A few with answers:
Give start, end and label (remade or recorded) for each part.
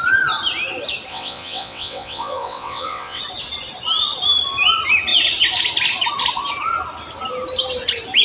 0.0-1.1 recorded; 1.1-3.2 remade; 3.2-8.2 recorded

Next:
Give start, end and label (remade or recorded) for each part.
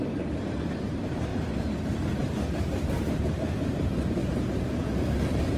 0.0-4.2 recorded; 4.2-5.6 remade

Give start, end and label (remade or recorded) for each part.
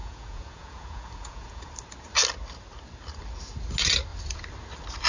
0.0-1.7 remade; 1.7-5.1 recorded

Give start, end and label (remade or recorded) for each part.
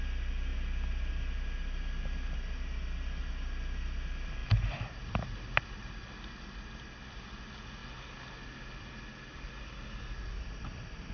0.0-11.1 recorded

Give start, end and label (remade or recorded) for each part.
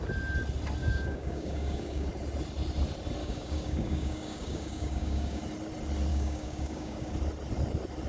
0.0-0.8 recorded; 0.8-2.1 remade; 2.1-3.2 recorded; 3.2-5.4 remade; 5.4-6.1 recorded; 6.1-7.1 remade; 7.1-8.1 recorded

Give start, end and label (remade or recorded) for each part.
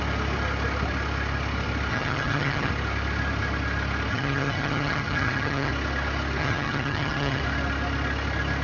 0.0-1.9 recorded; 1.9-2.7 remade; 2.7-4.1 recorded; 4.1-5.7 remade; 5.7-6.4 recorded; 6.4-7.4 remade; 7.4-8.6 recorded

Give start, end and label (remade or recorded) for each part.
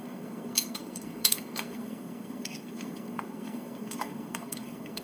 0.0-5.0 remade